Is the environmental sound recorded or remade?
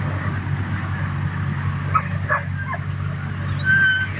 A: recorded